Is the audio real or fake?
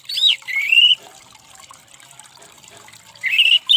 fake